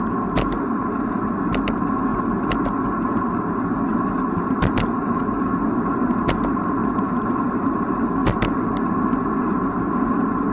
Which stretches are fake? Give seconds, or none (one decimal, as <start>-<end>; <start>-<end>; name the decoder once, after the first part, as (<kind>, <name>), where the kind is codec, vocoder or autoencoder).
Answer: 6.8-7.6 (vocoder, BigVGAN v2)